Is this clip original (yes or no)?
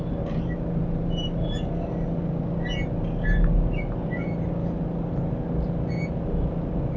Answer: yes